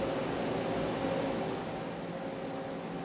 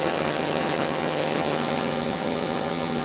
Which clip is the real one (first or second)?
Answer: first